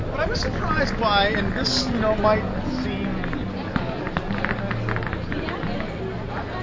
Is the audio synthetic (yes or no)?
no